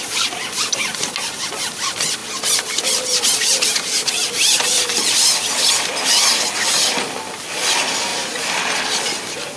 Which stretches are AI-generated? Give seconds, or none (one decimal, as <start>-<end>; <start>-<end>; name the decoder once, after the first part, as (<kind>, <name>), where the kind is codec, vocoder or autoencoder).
none